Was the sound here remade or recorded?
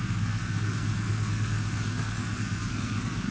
remade